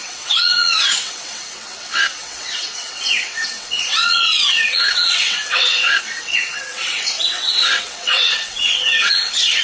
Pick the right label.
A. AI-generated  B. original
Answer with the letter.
A